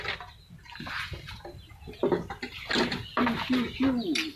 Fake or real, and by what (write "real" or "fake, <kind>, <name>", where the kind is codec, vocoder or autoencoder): real